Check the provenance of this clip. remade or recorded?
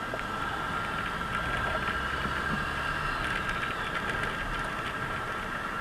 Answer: recorded